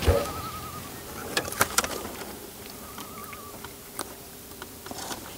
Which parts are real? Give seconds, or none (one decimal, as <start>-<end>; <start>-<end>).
0.0-1.2; 1.8-5.4